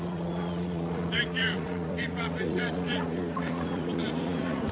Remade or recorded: remade